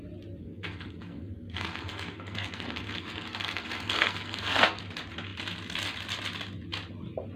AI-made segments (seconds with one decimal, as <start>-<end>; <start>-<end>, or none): 0.4-4.8